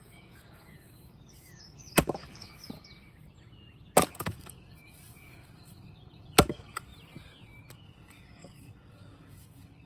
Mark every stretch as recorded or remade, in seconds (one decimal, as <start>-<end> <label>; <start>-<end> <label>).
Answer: 0.0-2.6 remade; 2.6-4.1 recorded; 4.1-6.9 remade; 6.9-7.7 recorded; 7.7-9.9 remade